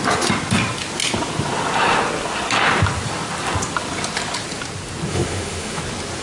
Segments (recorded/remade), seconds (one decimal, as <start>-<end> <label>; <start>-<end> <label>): 0.0-5.1 recorded; 5.1-5.8 remade; 5.8-6.2 recorded